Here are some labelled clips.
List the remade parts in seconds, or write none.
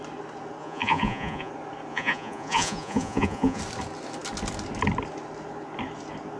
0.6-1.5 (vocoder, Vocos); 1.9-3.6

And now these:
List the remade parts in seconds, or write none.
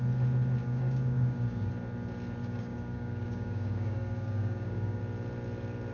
0.6-1.7 (codec, DAC); 2.4-5.0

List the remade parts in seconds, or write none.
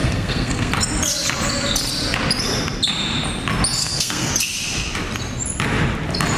0.0-0.7 (codec, SNAC); 3.8-4.3